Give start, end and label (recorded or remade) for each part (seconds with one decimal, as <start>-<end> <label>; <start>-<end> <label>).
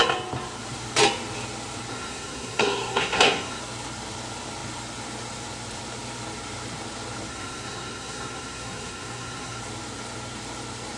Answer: 0.0-1.9 recorded; 1.9-3.6 remade; 3.6-7.3 recorded; 7.3-9.6 remade; 9.6-11.0 recorded